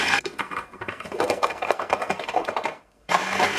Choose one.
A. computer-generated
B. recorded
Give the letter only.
A